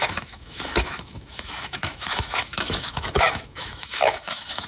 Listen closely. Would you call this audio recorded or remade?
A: remade